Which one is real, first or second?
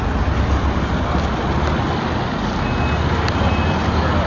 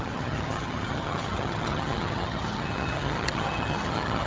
first